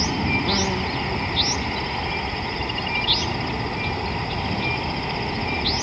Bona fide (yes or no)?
yes